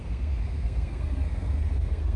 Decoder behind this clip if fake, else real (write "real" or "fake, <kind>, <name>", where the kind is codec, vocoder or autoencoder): fake, codec, SNAC